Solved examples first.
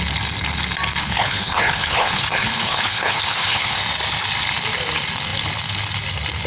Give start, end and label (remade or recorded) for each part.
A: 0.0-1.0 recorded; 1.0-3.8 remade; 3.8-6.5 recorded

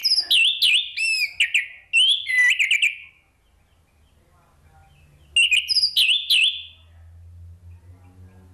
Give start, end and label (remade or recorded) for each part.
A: 0.0-8.5 recorded

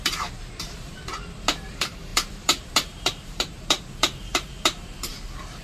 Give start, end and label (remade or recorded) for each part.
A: 0.0-0.9 remade; 0.9-1.7 recorded; 1.7-5.1 remade; 5.1-5.6 recorded

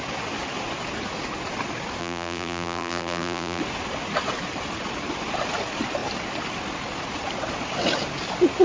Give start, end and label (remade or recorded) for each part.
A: 0.0-2.0 recorded; 2.0-3.6 remade; 3.6-8.6 recorded

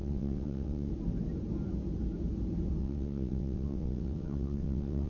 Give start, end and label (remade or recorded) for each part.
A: 0.0-0.9 remade; 0.9-2.8 recorded; 2.8-5.1 remade

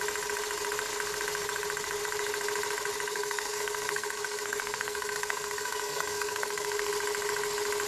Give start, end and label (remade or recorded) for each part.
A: 0.0-3.1 recorded; 3.1-6.9 remade; 6.9-7.9 recorded